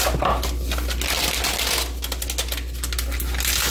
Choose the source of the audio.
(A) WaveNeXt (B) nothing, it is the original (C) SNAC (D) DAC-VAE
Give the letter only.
B